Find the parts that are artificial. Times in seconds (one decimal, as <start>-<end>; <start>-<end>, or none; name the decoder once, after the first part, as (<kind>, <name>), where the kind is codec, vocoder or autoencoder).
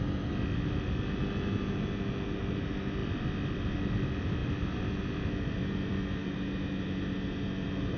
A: none